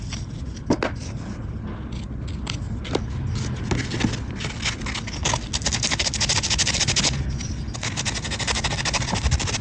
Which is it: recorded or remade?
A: recorded